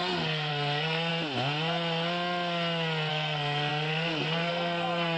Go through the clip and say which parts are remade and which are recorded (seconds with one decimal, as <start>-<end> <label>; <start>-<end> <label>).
0.0-1.1 remade; 1.1-3.1 recorded; 3.1-5.2 remade